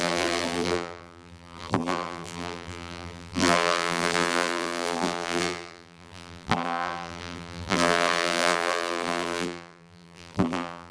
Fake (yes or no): yes